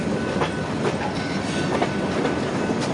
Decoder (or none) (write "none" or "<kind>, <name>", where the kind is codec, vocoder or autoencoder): none